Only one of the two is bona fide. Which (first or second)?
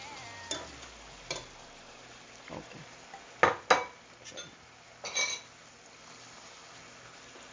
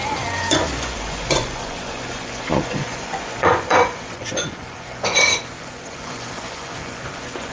first